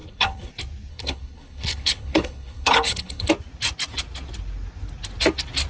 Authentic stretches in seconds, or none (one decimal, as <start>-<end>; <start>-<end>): 0.5-0.9; 3.3-5.7